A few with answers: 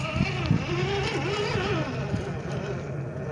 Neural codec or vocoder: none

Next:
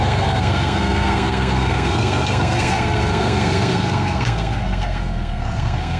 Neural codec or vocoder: codec, SNAC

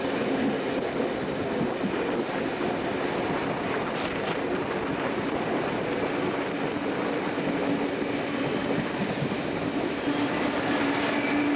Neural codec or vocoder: none